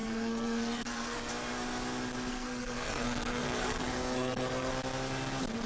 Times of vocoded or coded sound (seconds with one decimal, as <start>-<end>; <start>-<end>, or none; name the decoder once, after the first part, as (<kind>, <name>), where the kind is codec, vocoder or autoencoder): 0.0-1.3 (codec, SNAC); 2.3-4.7